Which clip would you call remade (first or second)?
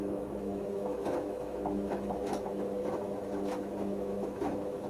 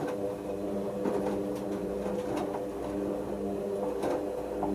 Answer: first